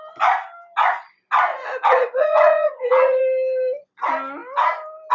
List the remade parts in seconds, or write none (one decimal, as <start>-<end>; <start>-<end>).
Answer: 1.5-3.2